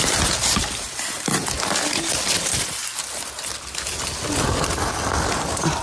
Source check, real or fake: real